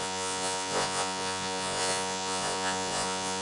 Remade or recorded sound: remade